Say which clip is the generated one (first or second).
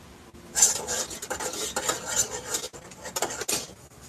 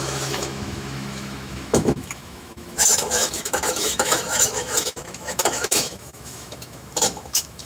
second